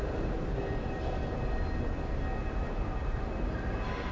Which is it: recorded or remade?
recorded